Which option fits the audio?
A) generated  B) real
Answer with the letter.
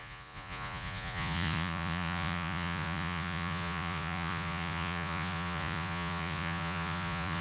A